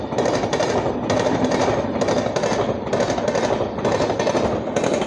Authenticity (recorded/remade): recorded